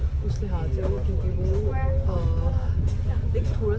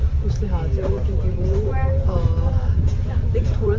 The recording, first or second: first